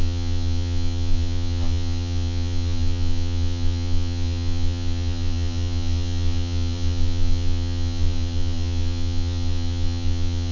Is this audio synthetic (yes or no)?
yes